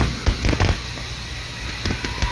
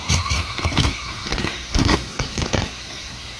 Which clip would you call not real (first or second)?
second